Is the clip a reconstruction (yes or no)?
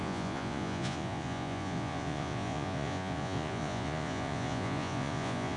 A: yes